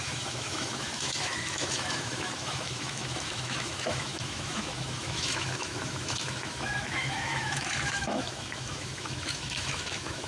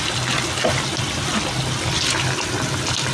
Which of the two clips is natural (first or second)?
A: second